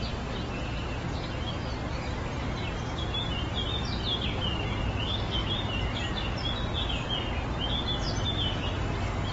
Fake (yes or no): no